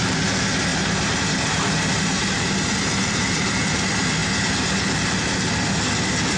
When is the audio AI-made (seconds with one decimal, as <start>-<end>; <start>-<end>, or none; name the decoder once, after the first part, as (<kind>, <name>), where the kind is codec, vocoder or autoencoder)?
0.7-3.8 (vocoder, BigVGAN v2)